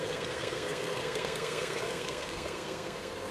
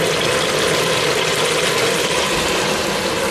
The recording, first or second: second